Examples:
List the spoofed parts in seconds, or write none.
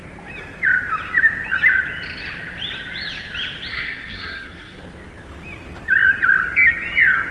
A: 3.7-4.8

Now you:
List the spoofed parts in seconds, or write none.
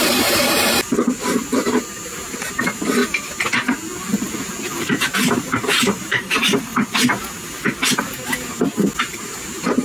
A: 0.0-3.0; 5.0-6.7; 9.1-9.8